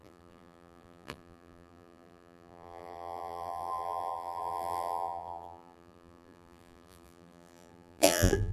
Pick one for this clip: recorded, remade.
remade